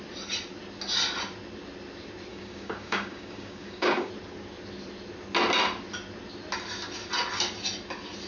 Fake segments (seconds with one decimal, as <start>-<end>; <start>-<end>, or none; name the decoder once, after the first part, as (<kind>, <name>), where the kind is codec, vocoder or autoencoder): 2.3-4.1 (codec, DAC)